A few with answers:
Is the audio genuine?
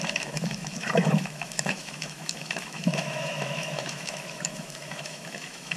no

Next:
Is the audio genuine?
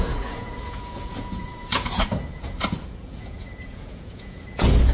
no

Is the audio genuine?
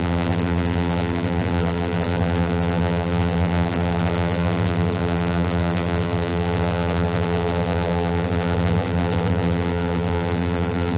no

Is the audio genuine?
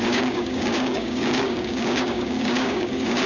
no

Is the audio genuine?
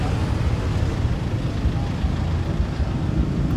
yes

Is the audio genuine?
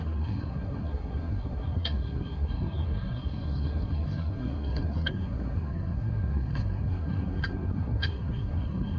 no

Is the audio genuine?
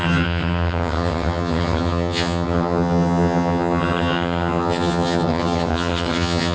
no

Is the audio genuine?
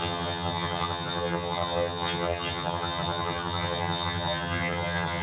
no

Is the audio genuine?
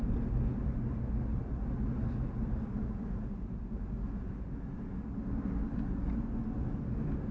yes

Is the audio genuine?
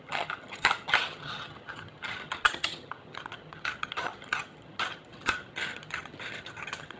no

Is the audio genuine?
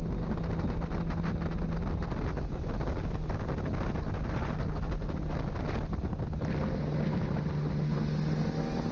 yes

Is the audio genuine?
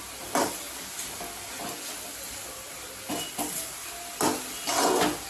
yes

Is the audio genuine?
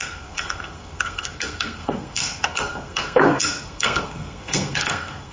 no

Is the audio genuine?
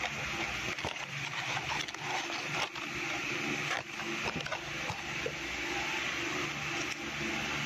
yes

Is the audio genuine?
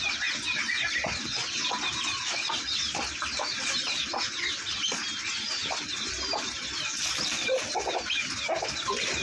yes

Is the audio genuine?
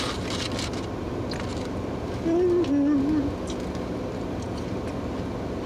yes